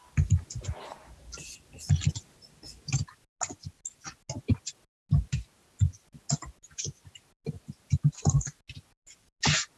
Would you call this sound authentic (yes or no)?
yes